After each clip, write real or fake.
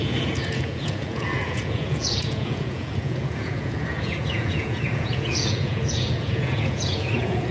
fake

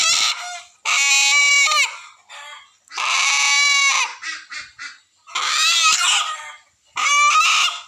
real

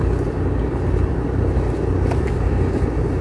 real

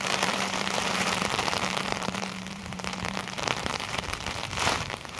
fake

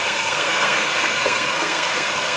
fake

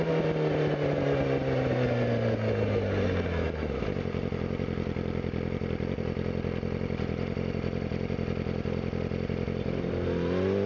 real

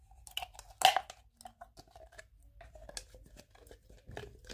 real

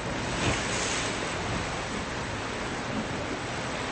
real